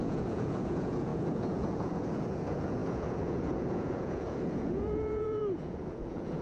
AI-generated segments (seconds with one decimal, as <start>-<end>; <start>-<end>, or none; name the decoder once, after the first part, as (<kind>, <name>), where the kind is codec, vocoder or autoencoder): 0.0-6.4 (vocoder, Vocos)